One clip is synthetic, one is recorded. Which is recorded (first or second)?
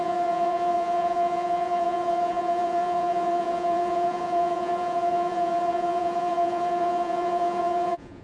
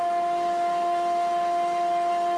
second